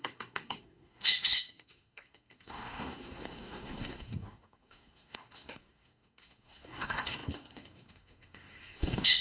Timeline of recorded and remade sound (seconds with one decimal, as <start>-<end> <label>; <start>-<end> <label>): 0.0-9.2 remade